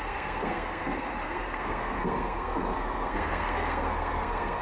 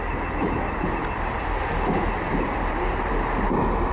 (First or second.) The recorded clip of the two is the second